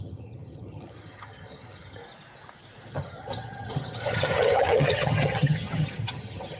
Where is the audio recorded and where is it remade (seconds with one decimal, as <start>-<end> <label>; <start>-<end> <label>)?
0.0-2.0 remade; 2.0-2.9 recorded; 2.9-6.6 remade